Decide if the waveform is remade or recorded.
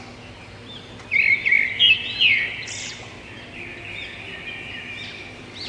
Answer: recorded